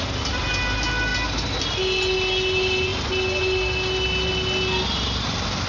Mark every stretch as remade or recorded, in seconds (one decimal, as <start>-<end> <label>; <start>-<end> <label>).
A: 0.0-5.7 recorded